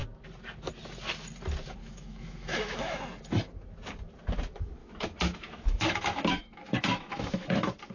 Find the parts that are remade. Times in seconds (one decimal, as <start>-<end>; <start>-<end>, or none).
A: 1.8-3.0; 4.8-7.9